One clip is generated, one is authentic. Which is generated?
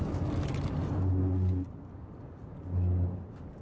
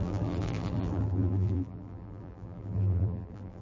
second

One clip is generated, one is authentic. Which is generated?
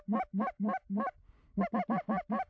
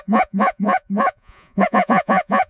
second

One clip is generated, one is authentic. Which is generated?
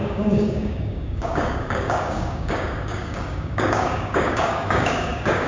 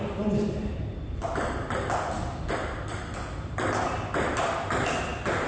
first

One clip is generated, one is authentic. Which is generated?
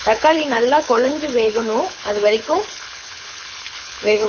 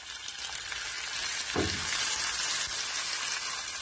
first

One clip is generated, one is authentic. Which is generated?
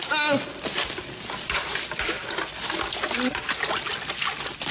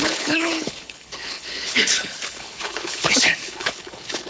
second